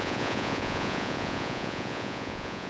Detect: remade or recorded remade